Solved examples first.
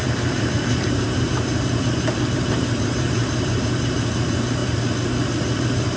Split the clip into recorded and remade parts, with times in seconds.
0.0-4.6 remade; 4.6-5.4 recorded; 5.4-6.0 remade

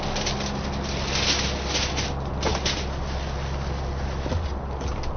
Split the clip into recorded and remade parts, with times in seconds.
0.0-5.2 recorded